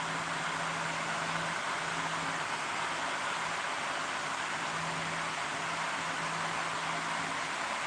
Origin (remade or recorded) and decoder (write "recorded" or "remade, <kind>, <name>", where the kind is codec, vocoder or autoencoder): recorded